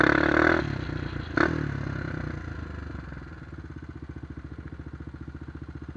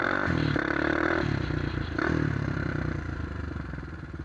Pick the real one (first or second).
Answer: first